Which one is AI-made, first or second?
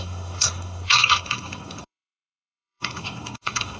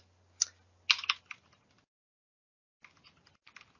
first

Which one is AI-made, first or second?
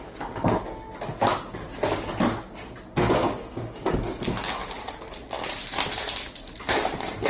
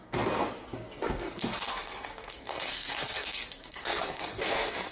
second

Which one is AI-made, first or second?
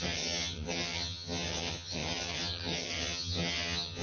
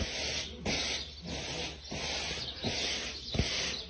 first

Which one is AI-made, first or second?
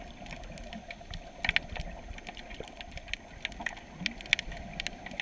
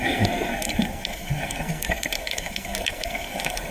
second